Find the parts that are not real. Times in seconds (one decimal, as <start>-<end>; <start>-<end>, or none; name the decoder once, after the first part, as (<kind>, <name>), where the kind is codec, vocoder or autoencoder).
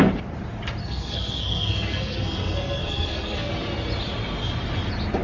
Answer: 0.8-3.5 (codec, SNAC)